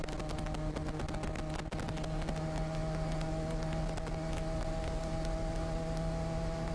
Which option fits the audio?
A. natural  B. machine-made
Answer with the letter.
A